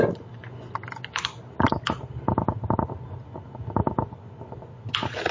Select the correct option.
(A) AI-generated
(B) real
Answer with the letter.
B